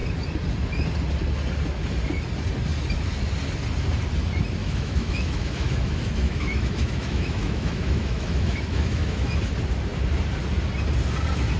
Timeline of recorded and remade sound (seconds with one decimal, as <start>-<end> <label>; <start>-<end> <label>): 0.0-4.6 recorded; 4.6-9.4 remade; 9.4-11.6 recorded